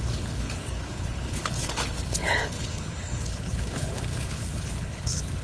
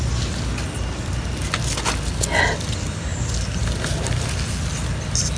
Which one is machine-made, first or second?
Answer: first